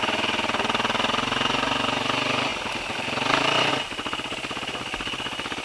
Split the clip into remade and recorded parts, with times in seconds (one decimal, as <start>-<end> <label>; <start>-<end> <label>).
0.0-5.6 recorded